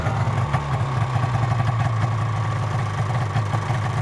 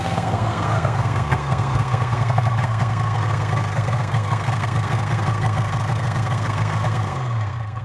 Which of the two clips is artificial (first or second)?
second